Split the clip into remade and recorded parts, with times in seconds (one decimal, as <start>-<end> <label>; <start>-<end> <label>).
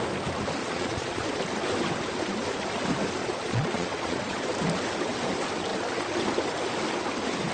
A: 0.0-0.6 recorded; 0.6-1.3 remade; 1.3-3.2 recorded; 3.2-4.4 remade; 4.4-7.5 recorded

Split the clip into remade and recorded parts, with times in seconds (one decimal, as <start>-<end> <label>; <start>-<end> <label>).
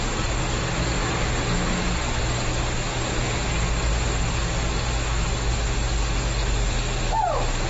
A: 0.0-7.7 recorded